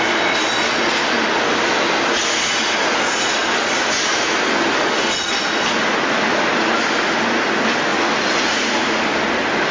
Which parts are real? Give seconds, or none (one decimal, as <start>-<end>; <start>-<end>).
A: 0.0-7.9; 9.0-9.7